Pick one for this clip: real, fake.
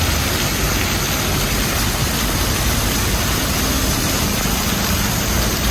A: real